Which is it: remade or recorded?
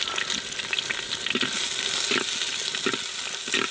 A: recorded